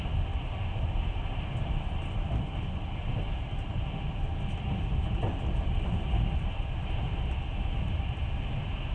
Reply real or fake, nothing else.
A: real